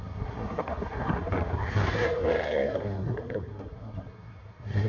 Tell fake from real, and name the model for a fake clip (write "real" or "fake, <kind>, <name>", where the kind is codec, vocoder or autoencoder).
fake, codec, SNAC